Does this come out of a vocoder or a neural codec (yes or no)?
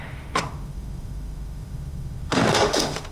yes